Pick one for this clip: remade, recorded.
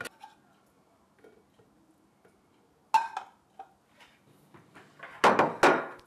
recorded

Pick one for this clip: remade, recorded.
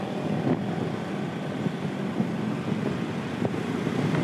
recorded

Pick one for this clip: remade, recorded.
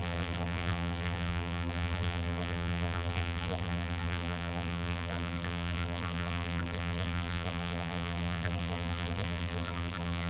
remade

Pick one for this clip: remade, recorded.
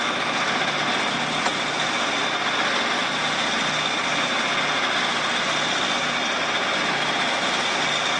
recorded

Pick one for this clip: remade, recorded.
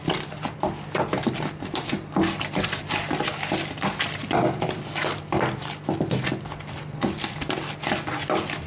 recorded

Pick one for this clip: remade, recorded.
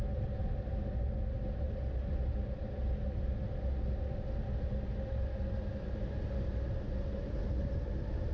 recorded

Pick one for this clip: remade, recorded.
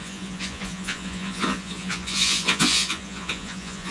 remade